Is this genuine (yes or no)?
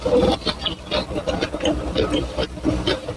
yes